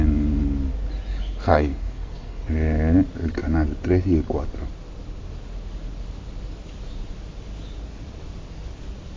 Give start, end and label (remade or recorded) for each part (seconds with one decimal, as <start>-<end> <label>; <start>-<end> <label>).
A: 0.0-1.1 recorded; 1.1-2.4 remade; 2.4-9.2 recorded